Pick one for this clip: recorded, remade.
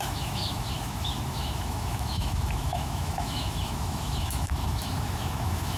remade